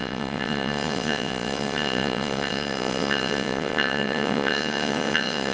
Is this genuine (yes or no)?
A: no